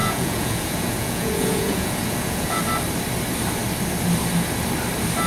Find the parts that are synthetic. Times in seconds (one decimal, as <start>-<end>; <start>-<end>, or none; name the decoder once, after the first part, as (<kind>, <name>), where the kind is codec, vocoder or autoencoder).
0.0-2.6 (vocoder, Vocos)